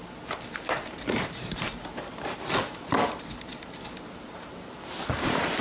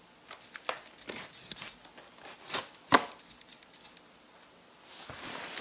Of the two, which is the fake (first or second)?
first